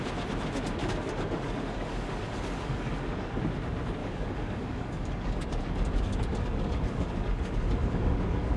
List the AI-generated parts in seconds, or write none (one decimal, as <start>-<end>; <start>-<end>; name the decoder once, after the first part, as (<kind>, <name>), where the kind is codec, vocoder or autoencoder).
0.8-3.4 (codec, DAC); 4.0-8.6